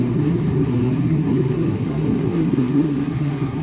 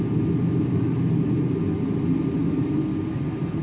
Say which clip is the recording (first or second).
second